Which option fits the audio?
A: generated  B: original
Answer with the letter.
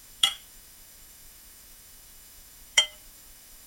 A